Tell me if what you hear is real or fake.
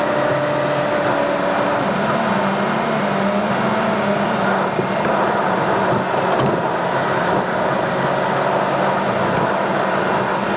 real